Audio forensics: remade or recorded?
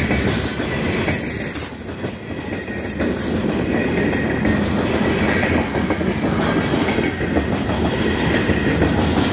recorded